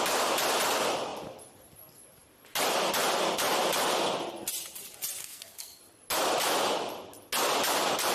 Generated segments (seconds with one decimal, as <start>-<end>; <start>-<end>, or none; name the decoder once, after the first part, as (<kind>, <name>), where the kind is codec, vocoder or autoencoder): 5.2-5.8 (codec, SNAC)

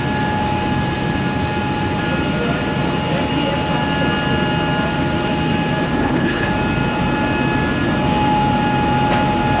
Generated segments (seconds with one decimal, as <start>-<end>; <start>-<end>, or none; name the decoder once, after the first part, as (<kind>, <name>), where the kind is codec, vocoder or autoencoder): 6.0-6.5 (codec, HILCodec)

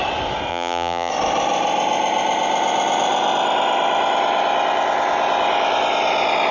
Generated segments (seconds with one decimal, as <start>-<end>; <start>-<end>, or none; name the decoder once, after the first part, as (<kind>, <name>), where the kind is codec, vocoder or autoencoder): 0.5-1.1 (vocoder, BigVGAN v2)

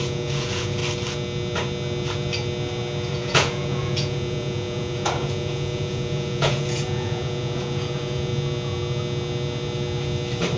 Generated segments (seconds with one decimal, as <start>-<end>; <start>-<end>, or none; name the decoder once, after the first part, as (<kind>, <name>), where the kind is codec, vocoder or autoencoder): 0.0-0.8 (vocoder, Vocos); 3.1-8.3

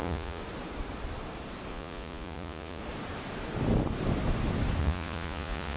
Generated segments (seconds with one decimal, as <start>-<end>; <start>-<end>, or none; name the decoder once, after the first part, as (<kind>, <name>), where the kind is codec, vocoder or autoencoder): 0.0-0.4 (vocoder, Vocos); 1.7-2.8; 4.8-5.8

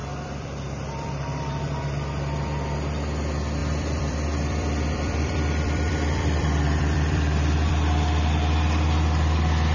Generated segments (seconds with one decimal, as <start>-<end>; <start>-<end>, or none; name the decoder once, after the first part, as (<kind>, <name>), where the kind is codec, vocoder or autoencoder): 0.0-1.8 (vocoder, BigVGAN v2); 3.6-7.7

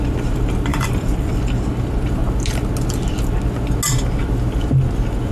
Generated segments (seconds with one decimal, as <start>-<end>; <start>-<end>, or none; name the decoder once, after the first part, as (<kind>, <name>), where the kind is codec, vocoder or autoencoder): 0.7-1.4 (vocoder, BigVGAN v2)